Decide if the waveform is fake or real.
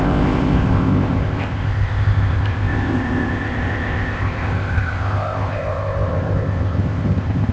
fake